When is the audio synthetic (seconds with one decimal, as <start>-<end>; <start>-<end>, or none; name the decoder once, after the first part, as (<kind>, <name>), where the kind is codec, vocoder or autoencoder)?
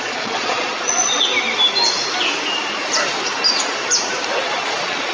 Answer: 0.0-1.3 (vocoder, Vocos); 4.4-5.1